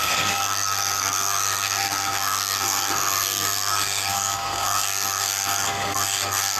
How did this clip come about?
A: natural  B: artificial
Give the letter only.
B